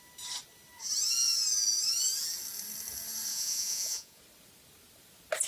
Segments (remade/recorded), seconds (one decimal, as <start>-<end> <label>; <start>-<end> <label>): 0.0-3.3 recorded; 3.3-4.2 remade; 4.2-5.5 recorded